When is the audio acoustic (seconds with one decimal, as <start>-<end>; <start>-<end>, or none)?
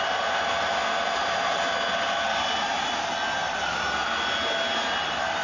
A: 0.0-5.4